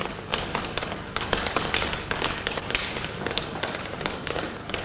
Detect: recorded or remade remade